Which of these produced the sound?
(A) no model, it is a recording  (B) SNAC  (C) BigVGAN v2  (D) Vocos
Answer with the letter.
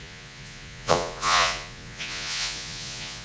D